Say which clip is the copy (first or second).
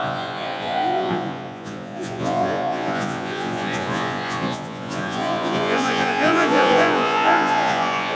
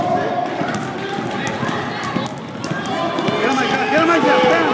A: first